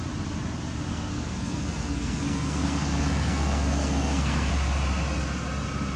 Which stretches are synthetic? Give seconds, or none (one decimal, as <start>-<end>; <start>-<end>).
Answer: 0.9-4.5